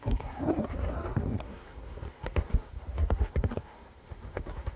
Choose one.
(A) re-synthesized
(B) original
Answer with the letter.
A